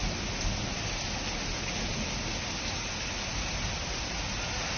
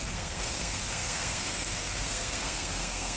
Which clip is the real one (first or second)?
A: first